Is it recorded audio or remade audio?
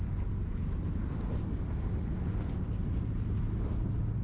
recorded